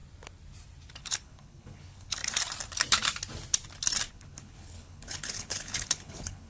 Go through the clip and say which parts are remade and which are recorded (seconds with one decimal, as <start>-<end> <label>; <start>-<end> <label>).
0.0-1.0 recorded; 1.0-2.2 remade; 2.2-4.1 recorded; 4.1-6.5 remade